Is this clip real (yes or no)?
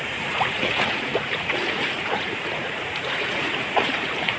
no